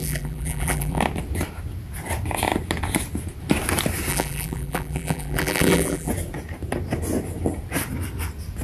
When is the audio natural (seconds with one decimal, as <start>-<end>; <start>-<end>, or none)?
1.0-4.1; 6.1-8.6